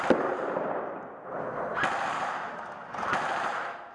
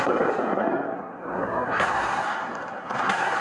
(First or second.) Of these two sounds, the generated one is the second